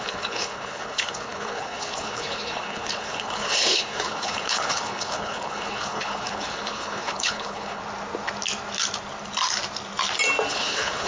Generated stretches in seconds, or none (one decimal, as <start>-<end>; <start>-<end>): 0.0-7.8; 10.5-11.1